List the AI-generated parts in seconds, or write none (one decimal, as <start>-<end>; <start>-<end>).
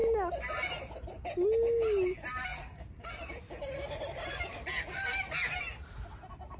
none